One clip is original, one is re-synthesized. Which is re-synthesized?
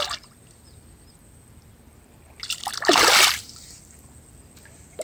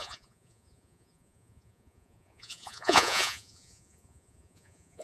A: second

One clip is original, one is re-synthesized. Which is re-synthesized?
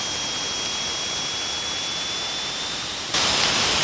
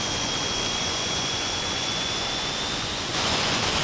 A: second